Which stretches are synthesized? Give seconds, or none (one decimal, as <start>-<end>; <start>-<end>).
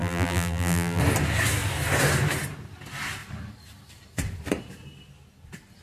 0.0-1.0